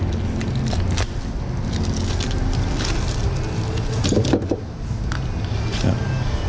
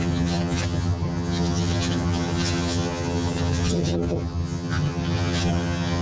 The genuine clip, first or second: first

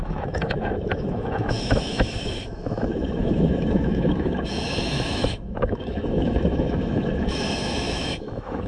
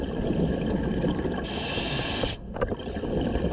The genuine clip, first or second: second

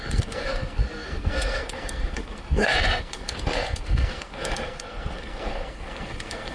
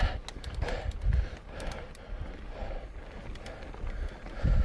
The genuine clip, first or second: second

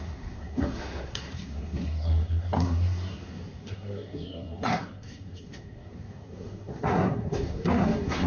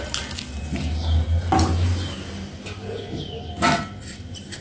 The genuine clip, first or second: second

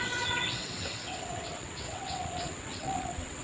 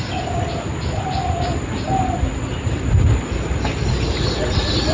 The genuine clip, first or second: second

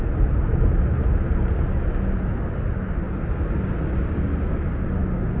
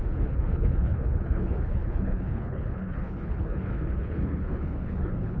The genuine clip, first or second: first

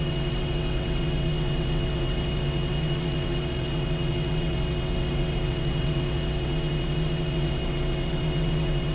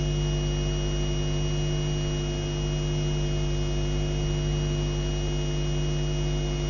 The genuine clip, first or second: second